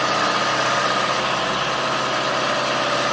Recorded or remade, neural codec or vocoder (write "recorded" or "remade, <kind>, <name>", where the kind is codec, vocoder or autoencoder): recorded